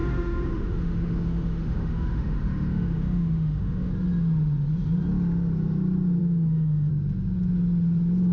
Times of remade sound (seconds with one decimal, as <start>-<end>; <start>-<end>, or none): 0.0-3.9; 6.2-6.9